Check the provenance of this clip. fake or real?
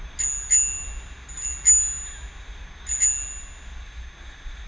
real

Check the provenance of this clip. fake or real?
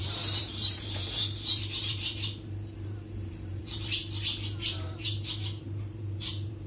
fake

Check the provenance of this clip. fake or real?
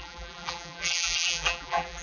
fake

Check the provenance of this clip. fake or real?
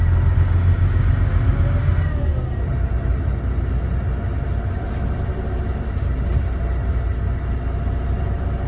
real